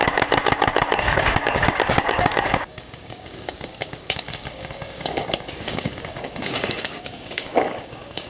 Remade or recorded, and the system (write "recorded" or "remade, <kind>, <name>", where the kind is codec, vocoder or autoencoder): remade, codec, DAC